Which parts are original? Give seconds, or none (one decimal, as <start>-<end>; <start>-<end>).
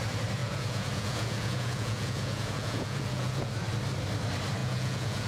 0.0-0.4; 3.5-4.6